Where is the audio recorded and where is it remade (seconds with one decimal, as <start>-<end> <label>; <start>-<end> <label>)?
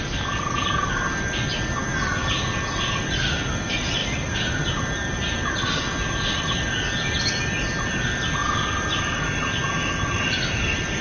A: 0.0-4.0 recorded; 4.0-6.6 remade; 6.6-8.4 recorded; 8.4-9.4 remade; 9.4-11.0 recorded